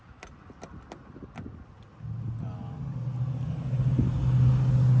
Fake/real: real